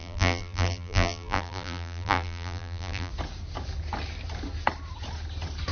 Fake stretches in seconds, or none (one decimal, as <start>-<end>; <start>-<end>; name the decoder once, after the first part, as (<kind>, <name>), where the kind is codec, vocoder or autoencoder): 0.0-3.1 (vocoder, BigVGAN v2)